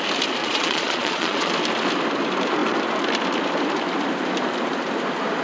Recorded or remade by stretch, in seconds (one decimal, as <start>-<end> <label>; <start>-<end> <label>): 0.0-0.4 recorded; 0.4-1.5 remade; 1.5-5.4 recorded